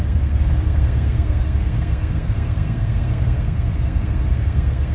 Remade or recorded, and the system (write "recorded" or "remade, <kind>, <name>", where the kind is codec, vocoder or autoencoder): remade, codec, SNAC